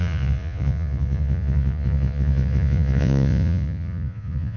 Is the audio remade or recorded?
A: remade